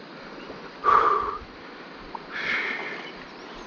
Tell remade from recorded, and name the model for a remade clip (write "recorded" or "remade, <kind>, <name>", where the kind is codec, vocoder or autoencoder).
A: recorded